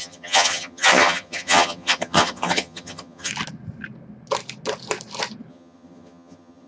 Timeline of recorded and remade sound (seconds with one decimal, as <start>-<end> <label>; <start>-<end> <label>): 0.0-3.3 remade; 3.3-5.5 recorded; 5.5-6.7 remade